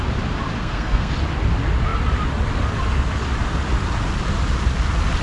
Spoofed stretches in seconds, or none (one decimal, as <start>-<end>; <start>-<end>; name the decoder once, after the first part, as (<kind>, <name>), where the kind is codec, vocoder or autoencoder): 0.6-1.1 (codec, SNAC)